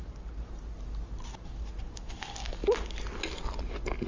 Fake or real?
real